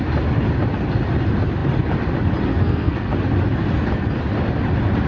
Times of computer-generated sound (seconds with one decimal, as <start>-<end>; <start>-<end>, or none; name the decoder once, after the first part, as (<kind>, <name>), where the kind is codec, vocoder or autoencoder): 2.5-3.1 (codec, SNAC)